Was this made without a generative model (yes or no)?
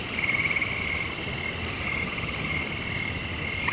yes